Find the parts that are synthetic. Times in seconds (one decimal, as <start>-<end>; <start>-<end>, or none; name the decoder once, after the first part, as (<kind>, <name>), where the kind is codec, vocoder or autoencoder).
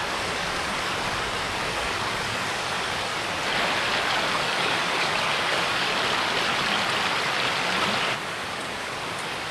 0.0-3.1 (codec, DAC); 4.3-5.9; 8.0-9.5